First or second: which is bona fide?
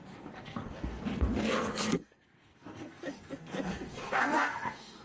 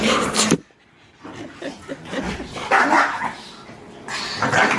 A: second